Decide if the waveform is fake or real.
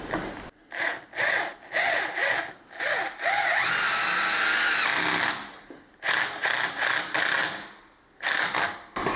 real